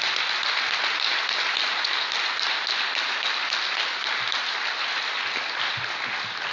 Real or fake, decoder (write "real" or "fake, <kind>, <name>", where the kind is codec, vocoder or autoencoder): real